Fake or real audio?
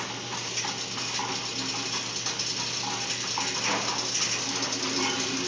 real